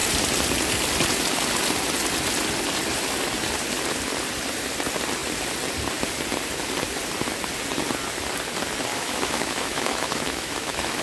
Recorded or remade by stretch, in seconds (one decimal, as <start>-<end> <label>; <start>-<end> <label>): 0.0-8.9 recorded; 8.9-11.0 remade